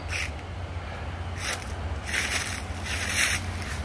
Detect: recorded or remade recorded